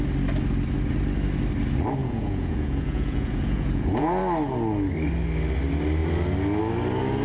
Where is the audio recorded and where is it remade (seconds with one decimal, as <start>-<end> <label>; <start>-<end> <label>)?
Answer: 0.0-2.0 recorded; 2.0-4.2 remade; 4.2-7.2 recorded